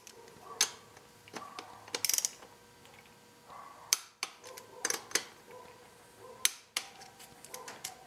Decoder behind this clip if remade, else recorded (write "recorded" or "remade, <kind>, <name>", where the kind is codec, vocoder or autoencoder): recorded